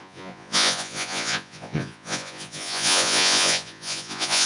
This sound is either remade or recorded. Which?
remade